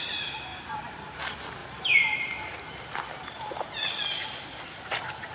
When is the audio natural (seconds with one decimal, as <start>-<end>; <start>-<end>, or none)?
0.0-0.5; 1.2-1.6; 2.6-5.3